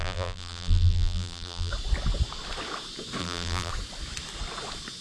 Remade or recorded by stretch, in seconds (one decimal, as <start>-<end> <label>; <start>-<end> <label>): 0.0-1.7 remade; 1.7-3.2 recorded; 3.2-3.7 remade; 3.7-5.0 recorded